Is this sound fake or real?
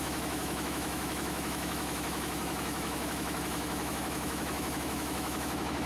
fake